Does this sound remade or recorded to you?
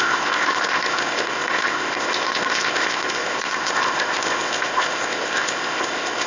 remade